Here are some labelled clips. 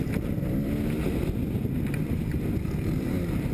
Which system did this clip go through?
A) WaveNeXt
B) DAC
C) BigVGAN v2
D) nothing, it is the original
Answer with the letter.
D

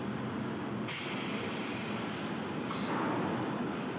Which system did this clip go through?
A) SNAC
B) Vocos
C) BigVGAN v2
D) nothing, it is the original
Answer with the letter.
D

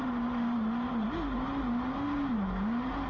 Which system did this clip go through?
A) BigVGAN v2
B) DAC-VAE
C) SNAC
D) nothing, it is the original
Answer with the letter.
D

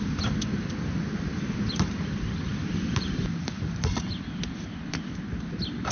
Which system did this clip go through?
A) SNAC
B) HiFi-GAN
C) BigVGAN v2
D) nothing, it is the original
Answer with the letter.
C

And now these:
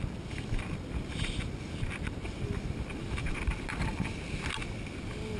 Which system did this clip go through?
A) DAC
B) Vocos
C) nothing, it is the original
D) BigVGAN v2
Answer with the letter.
C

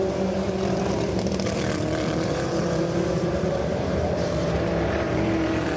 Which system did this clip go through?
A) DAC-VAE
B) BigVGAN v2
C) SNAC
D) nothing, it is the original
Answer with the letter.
B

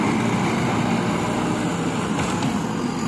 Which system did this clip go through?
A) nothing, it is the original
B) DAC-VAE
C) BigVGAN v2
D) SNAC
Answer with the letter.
A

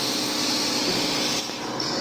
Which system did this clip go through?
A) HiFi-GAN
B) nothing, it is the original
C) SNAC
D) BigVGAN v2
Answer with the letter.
B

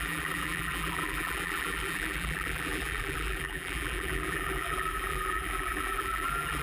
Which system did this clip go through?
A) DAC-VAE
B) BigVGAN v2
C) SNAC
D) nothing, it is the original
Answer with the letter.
B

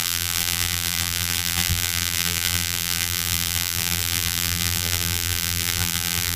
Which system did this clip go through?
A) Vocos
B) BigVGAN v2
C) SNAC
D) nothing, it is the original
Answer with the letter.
B